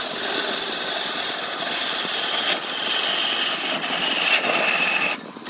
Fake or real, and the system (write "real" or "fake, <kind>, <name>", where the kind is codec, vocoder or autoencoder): real